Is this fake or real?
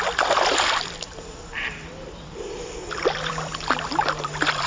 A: fake